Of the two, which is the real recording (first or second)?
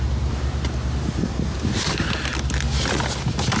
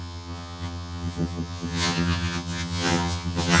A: first